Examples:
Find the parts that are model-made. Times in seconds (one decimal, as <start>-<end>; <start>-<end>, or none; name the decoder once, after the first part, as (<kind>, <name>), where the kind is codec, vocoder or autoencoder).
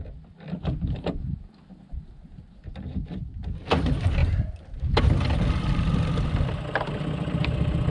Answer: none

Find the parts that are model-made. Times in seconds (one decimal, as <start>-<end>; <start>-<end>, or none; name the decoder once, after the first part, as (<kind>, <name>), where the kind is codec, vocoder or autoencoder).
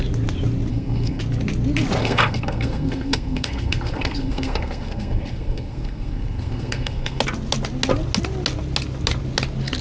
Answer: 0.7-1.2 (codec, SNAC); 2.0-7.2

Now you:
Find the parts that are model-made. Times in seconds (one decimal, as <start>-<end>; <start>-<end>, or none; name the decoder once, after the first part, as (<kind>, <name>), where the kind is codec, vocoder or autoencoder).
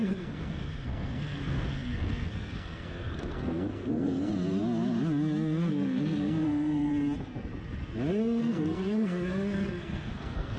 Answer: 0.0-4.3 (codec, SNAC); 5.7-6.9; 8.1-10.6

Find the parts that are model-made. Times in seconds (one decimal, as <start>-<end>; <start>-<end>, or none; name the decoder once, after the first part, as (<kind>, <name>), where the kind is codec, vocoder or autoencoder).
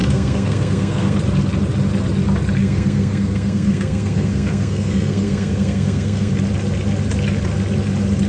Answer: 0.0-1.2 (codec, SNAC); 2.6-6.3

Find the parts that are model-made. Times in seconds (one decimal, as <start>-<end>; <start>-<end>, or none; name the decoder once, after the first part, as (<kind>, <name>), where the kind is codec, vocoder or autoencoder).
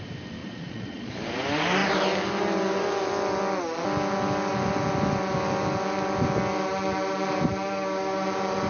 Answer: 0.4-1.1 (vocoder, Vocos)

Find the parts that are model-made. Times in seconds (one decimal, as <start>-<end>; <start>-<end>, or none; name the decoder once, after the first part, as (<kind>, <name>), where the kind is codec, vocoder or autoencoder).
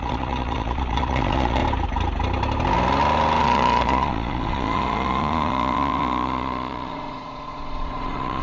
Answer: 0.0-1.6 (vocoder, Vocos); 3.4-8.4